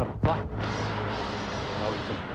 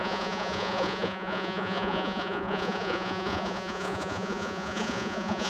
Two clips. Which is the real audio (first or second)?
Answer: first